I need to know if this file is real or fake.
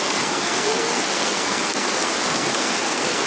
fake